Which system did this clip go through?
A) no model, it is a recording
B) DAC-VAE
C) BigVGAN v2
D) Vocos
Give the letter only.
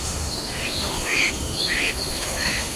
B